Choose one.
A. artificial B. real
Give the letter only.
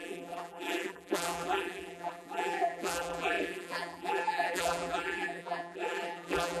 A